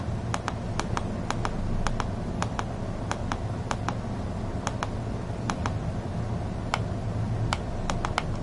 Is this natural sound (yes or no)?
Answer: yes